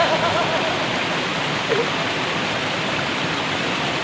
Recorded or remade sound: remade